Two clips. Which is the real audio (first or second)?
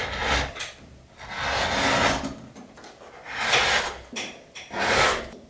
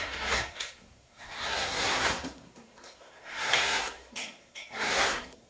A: first